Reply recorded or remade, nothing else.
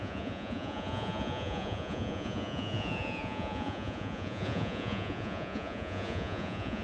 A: remade